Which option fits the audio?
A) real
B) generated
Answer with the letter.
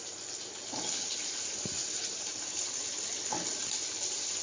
A